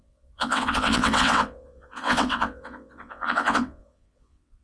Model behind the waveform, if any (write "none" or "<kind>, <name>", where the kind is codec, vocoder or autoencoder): vocoder, WaveNeXt